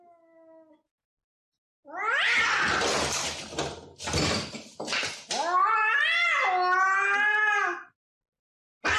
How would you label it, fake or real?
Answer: real